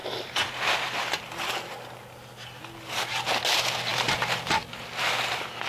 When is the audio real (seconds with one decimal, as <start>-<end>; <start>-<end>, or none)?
0.0-5.7